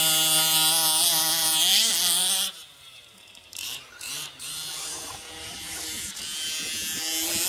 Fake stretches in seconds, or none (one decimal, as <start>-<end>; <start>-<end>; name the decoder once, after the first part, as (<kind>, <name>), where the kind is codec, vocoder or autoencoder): 1.7-6.2 (vocoder, BigVGAN v2)